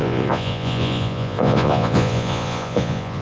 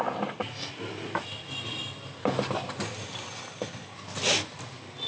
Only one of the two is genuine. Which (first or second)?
second